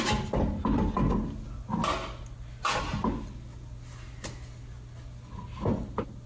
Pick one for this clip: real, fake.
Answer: real